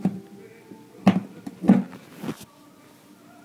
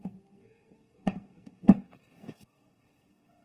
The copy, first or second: second